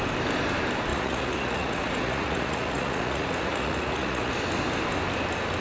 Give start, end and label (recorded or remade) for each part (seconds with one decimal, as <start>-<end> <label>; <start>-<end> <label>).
0.0-0.9 recorded; 0.9-4.3 remade; 4.3-5.6 recorded